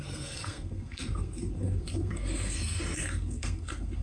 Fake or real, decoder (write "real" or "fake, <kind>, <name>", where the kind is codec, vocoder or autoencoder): fake, codec, SNAC